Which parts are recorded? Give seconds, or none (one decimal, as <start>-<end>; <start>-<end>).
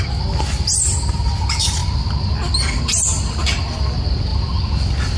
0.0-5.2